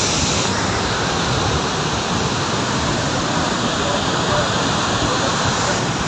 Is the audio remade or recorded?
recorded